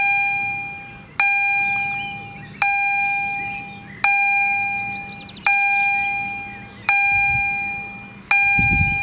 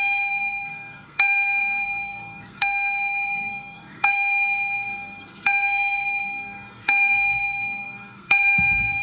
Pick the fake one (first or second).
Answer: second